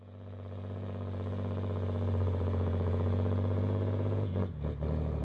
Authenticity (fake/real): fake